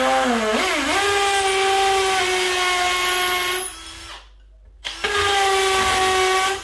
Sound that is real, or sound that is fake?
real